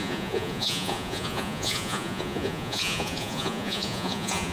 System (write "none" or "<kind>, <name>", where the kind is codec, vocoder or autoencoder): vocoder, Vocos